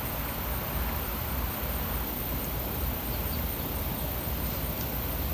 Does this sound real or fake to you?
fake